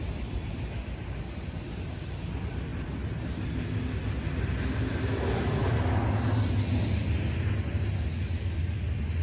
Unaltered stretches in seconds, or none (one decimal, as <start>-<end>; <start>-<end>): 0.0-9.2